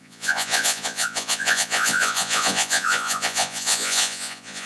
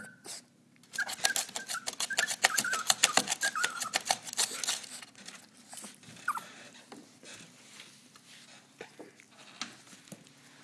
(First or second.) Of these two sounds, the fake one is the first